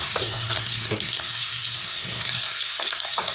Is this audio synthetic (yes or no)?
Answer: yes